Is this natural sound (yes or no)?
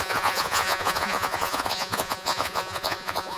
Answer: no